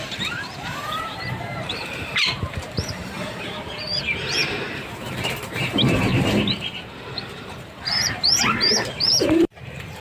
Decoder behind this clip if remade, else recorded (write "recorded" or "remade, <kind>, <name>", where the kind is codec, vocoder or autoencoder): remade, vocoder, BigVGAN v2